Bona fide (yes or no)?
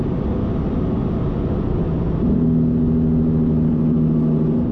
yes